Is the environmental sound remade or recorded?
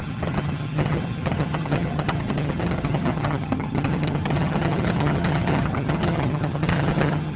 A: remade